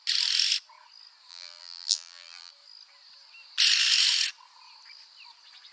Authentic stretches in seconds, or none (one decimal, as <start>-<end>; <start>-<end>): 0.0-1.3; 2.5-5.7